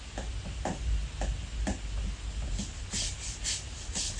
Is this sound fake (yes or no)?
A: no